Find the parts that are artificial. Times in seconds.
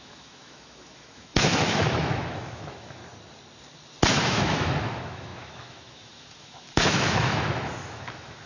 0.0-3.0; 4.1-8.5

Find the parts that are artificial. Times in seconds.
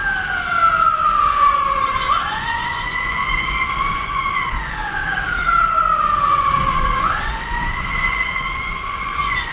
1.2-5.0; 6.3-9.5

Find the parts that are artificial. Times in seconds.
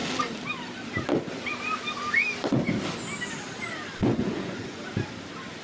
4.0-4.8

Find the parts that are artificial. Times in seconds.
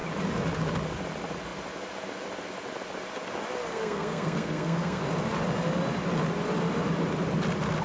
3.7-5.0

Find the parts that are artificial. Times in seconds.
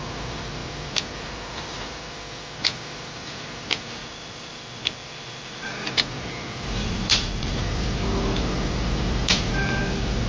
4.0-5.7; 6.8-7.6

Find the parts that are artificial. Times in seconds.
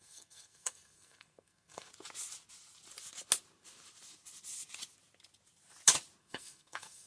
0.0-1.9; 6.2-7.1